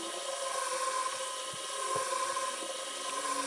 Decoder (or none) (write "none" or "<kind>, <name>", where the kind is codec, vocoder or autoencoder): none